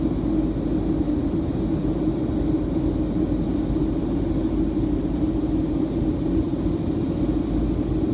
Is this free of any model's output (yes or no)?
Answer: yes